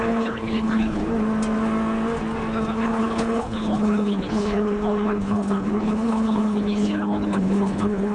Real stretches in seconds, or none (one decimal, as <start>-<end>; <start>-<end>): 1.0-2.7